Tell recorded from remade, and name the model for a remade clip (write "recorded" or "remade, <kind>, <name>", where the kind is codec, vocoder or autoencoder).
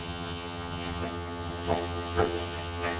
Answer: remade, vocoder, HiFi-GAN